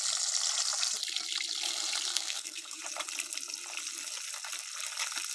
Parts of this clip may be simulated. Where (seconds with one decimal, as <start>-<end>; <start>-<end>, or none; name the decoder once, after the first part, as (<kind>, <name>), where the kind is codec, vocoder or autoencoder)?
2.1-2.8 (codec, SNAC)